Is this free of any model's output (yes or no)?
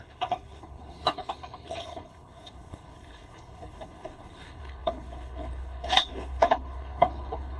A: no